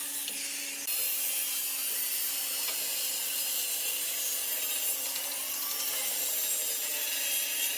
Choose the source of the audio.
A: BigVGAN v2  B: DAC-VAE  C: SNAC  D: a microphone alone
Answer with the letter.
D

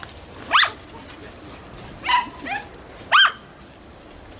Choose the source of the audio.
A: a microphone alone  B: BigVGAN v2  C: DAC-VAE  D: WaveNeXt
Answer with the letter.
A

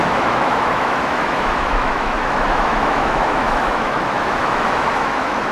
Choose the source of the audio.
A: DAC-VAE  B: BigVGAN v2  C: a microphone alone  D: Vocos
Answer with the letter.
A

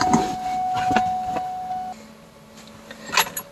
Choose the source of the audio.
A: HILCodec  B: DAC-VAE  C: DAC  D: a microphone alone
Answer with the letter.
D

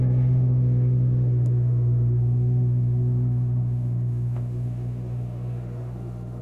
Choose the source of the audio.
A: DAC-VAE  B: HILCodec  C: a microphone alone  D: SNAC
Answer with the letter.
A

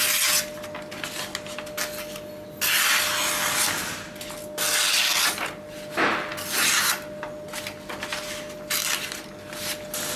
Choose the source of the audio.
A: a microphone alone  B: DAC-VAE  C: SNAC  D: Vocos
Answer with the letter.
A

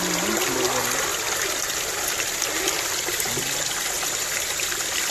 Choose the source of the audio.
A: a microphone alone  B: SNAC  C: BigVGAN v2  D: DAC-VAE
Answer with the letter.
A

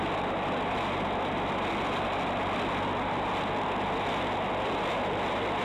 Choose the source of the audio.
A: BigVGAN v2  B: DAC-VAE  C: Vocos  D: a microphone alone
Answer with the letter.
D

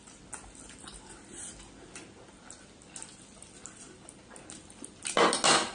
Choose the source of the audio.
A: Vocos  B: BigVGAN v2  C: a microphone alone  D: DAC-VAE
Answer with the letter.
C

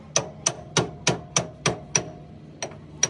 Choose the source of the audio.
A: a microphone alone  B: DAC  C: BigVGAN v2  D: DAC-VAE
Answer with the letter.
A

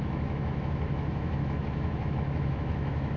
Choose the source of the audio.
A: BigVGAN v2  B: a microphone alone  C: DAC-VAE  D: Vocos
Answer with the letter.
C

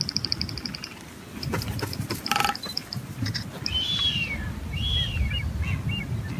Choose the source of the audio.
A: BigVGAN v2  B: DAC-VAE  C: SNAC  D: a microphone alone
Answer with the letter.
D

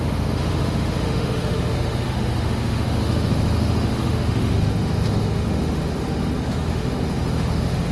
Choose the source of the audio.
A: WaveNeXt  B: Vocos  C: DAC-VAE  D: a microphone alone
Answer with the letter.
C